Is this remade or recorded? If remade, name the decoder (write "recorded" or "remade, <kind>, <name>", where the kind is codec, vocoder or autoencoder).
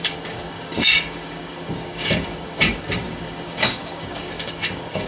remade, codec, DAC